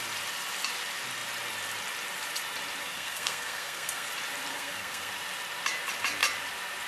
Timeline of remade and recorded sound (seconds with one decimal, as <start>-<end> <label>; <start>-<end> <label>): 0.0-2.8 recorded; 2.8-4.1 remade; 4.1-4.5 recorded; 4.5-5.1 remade; 5.1-6.9 recorded